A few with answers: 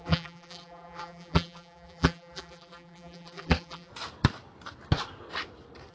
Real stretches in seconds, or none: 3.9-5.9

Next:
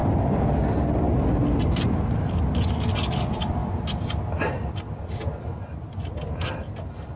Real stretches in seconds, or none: 0.0-7.2

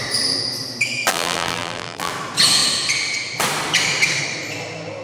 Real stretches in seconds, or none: 0.0-1.1; 2.1-5.0

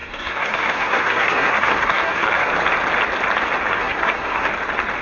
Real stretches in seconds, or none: 2.5-3.7; 4.5-5.0

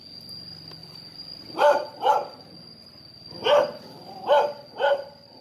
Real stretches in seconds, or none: 0.0-0.8; 2.0-5.4

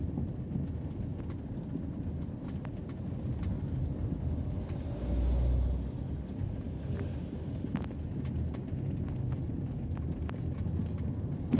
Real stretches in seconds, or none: 0.0-11.6

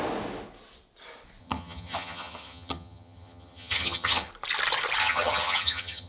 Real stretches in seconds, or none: 0.0-1.4; 4.3-5.0

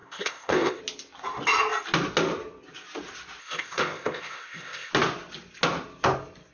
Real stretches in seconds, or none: 0.8-3.4; 4.9-6.5